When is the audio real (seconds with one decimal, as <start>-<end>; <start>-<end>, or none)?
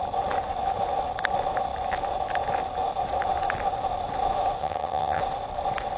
0.0-4.6; 5.2-6.0